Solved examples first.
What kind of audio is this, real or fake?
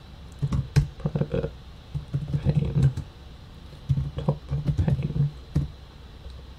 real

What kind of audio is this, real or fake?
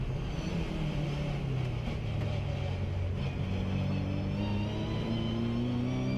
real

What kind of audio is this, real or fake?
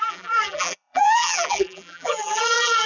fake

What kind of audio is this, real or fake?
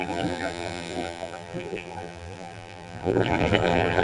fake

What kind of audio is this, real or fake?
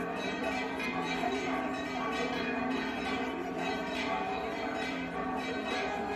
fake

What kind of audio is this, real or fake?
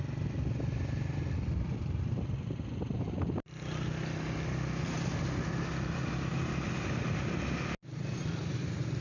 real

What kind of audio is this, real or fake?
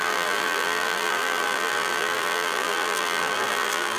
fake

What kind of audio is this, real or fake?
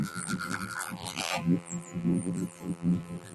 fake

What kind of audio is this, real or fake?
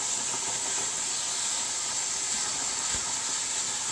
real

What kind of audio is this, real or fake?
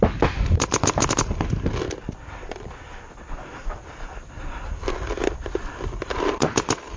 real